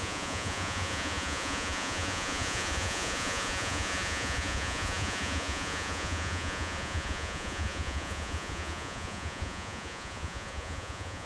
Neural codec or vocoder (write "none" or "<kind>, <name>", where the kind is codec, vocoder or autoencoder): vocoder, Vocos